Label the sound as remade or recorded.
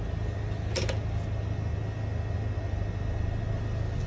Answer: recorded